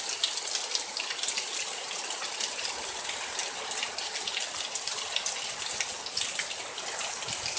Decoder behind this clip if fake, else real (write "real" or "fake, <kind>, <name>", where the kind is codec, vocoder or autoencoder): real